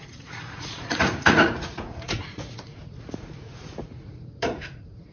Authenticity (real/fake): fake